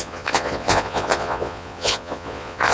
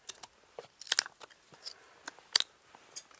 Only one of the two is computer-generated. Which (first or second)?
first